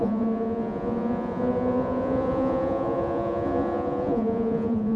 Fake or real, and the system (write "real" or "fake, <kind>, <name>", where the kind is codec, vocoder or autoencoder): fake, vocoder, Vocos